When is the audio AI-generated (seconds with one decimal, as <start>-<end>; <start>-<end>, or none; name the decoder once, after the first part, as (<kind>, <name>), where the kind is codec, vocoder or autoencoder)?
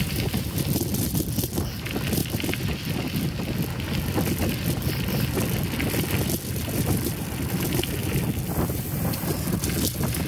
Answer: none